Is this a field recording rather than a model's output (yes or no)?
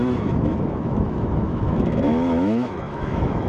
no